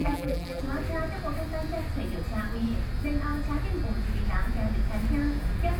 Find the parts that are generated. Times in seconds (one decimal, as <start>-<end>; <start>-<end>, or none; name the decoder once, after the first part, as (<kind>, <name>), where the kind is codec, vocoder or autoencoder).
0.0-0.6 (vocoder, BigVGAN v2)